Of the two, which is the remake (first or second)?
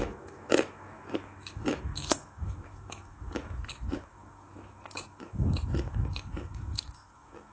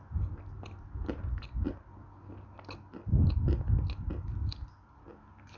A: first